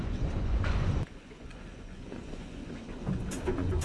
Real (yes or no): no